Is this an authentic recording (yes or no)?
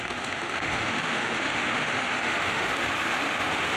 no